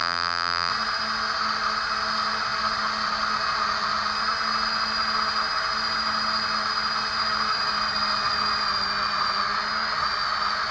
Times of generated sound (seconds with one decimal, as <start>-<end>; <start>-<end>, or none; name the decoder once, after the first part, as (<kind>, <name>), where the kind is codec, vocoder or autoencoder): 0.0-0.7 (vocoder, BigVGAN v2)